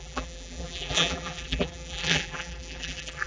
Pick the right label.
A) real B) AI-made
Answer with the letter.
B